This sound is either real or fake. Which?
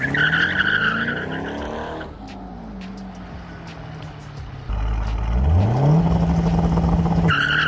real